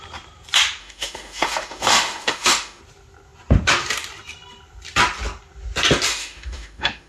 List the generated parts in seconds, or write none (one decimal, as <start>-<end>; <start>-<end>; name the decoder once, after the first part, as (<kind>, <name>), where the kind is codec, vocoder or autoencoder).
0.8-2.8 (autoencoder, DAC-VAE); 6.1-7.1